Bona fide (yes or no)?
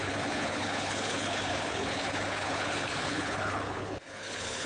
no